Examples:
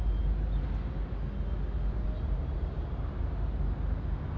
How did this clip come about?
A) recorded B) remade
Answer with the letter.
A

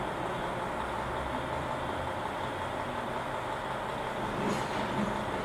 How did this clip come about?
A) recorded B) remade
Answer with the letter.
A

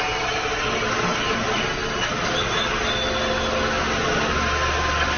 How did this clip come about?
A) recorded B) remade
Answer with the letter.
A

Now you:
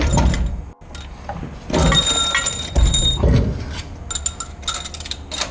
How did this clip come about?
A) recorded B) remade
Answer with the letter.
A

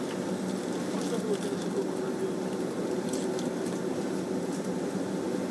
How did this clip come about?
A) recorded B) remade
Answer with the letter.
A